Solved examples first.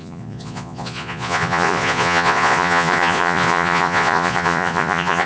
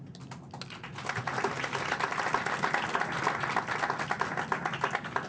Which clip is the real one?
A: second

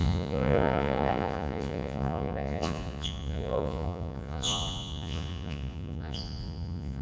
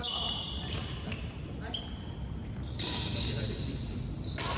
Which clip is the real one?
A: second